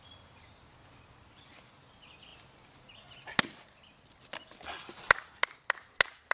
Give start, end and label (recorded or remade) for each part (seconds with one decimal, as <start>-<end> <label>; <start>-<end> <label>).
0.0-6.3 recorded